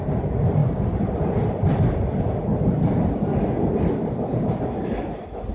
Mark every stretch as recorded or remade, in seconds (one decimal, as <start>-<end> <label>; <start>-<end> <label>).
0.0-5.5 recorded